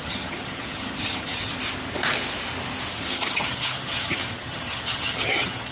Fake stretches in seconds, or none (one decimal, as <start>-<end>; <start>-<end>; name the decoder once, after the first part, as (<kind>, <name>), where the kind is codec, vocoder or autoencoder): 0.0-1.5 (vocoder, HiFi-GAN); 2.9-5.7